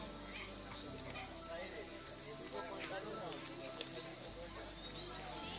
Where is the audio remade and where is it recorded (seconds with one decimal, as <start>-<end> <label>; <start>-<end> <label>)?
0.0-5.6 recorded